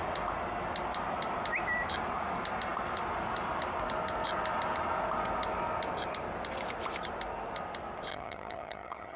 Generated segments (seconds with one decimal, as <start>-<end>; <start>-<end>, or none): 8.1-9.2